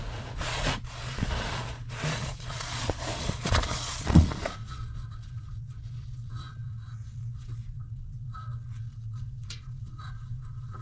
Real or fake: fake